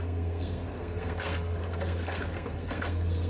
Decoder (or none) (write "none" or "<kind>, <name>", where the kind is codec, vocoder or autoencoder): codec, SNAC